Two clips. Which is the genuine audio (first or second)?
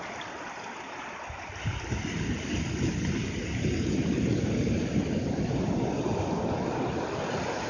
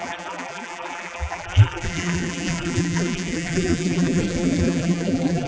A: first